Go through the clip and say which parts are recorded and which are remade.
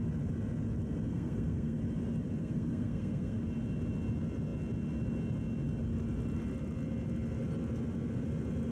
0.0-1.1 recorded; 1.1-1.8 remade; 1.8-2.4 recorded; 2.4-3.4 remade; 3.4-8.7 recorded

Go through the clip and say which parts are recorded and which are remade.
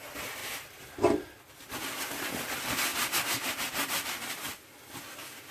0.0-0.4 recorded; 0.4-0.9 remade; 0.9-2.9 recorded; 2.9-4.3 remade; 4.3-5.5 recorded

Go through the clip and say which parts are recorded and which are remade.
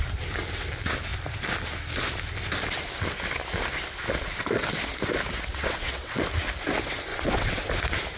0.0-5.5 recorded; 5.5-6.2 remade; 6.2-7.1 recorded; 7.1-7.7 remade; 7.7-8.2 recorded